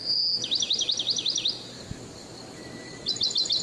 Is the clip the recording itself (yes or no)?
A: yes